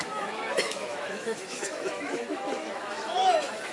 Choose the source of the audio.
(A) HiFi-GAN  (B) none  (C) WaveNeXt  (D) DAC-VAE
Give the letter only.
D